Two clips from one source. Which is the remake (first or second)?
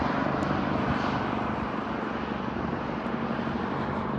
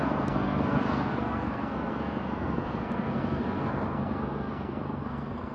second